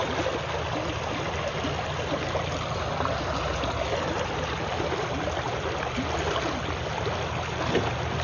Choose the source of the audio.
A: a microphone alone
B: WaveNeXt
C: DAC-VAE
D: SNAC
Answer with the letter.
A